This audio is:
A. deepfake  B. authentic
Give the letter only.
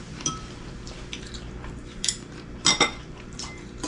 A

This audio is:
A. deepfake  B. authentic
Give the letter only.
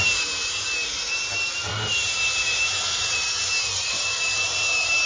A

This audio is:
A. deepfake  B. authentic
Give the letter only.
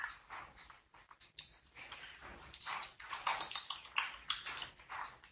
B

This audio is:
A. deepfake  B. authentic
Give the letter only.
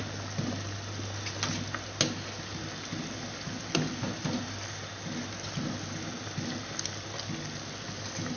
B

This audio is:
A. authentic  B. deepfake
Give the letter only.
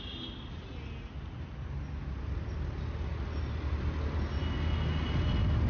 A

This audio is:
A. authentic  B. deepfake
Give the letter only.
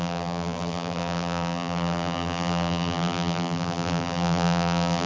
B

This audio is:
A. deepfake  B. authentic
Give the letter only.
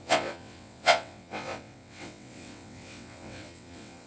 A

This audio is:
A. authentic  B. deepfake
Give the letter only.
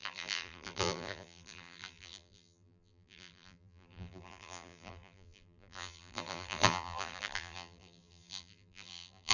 B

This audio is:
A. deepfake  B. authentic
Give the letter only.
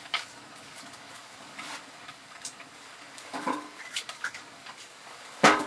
A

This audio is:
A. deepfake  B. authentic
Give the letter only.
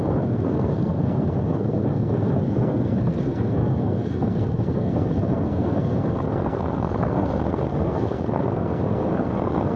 A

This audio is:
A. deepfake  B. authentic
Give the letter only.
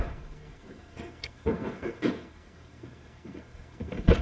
A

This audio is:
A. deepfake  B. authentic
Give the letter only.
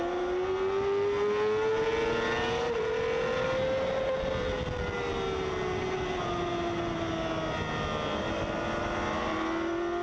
B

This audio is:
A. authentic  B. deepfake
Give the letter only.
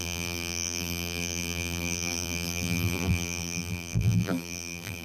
B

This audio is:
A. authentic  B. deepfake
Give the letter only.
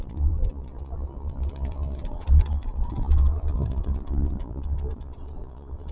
B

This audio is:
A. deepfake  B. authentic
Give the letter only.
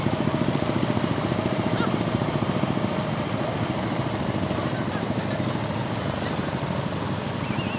A